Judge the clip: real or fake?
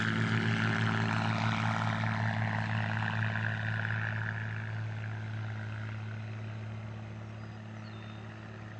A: real